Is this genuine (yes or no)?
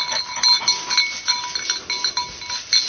yes